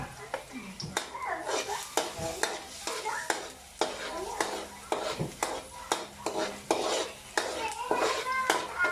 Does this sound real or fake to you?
real